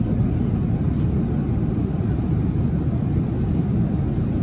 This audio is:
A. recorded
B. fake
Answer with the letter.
A